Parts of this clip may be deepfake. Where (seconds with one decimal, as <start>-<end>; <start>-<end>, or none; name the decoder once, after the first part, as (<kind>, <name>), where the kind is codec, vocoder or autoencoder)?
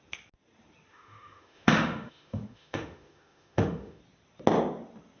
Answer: 0.9-4.0 (autoencoder, DAC-VAE)